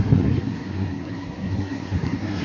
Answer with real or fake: fake